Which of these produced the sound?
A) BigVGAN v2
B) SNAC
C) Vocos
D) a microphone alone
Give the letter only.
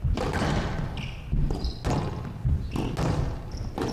D